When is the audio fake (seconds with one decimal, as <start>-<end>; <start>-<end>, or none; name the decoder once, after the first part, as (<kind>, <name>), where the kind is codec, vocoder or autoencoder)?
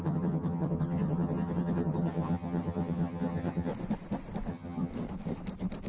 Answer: 0.0-3.7 (vocoder, HiFi-GAN); 4.5-4.9